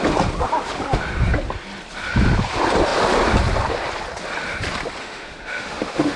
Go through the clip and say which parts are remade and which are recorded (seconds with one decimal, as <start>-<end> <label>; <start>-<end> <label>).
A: 0.0-5.0 recorded; 5.0-6.2 remade